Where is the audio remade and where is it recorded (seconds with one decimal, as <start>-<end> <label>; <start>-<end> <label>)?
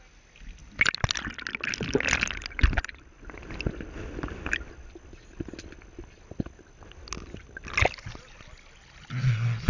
0.0-9.7 recorded